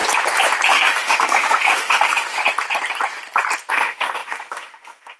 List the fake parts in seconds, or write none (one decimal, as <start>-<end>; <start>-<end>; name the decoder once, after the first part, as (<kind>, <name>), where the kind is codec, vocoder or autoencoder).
0.7-2.4 (autoencoder, DAC-VAE); 3.7-5.2